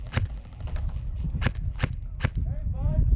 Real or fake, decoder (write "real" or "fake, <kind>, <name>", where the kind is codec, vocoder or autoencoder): fake, vocoder, BigVGAN v2